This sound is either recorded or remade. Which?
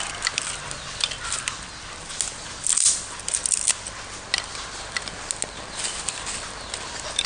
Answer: recorded